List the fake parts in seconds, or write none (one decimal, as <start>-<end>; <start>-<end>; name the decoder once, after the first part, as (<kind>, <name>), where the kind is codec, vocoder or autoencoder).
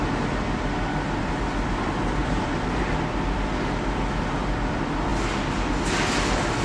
2.2-2.8 (vocoder, BigVGAN v2)